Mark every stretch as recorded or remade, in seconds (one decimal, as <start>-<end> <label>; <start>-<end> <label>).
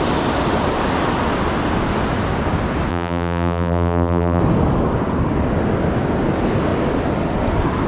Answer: 0.0-2.9 recorded; 2.9-4.4 remade; 4.4-7.9 recorded